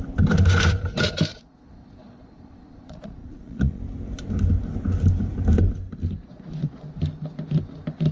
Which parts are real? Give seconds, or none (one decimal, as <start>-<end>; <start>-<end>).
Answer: 0.0-1.3; 3.8-6.2; 7.0-8.1